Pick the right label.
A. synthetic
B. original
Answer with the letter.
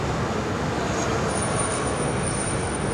B